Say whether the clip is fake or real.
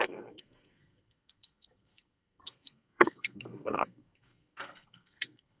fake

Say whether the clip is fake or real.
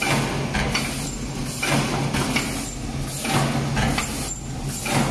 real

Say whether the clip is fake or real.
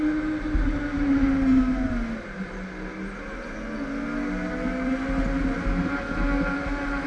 real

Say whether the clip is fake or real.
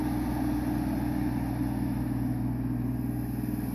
real